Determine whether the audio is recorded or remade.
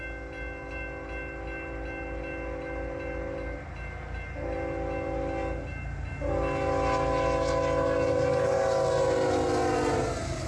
recorded